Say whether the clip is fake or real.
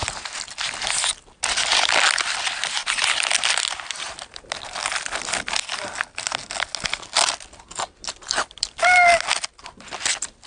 real